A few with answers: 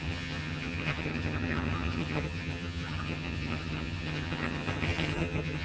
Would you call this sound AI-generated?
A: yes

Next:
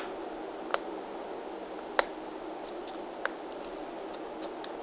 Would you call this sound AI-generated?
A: no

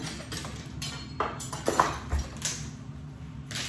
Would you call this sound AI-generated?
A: no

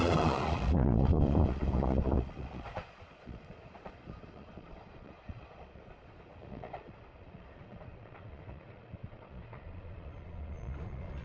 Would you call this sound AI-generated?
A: yes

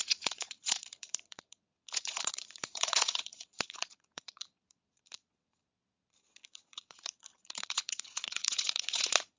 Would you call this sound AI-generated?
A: yes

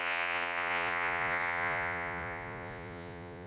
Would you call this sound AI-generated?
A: yes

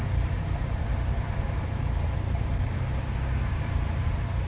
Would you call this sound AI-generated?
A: yes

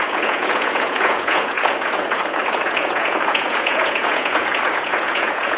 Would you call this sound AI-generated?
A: yes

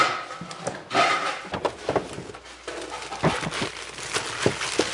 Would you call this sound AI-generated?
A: no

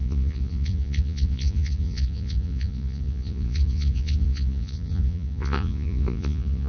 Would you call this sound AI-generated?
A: yes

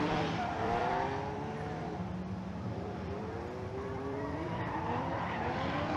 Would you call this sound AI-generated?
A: yes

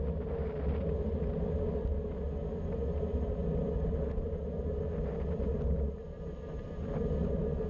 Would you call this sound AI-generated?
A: no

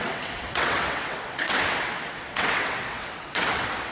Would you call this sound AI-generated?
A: yes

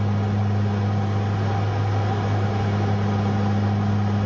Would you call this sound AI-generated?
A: no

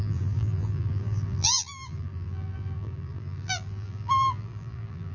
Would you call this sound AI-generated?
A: yes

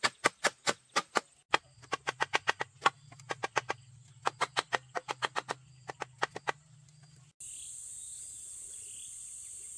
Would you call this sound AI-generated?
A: no